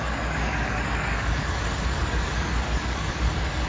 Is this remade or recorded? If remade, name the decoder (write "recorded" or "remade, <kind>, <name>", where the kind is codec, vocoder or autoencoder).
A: remade, codec, DAC